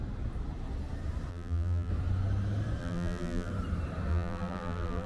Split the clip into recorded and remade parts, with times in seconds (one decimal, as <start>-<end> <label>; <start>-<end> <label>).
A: 0.0-1.3 recorded; 1.3-1.9 remade; 1.9-2.8 recorded; 2.8-3.5 remade; 3.5-4.1 recorded; 4.1-5.1 remade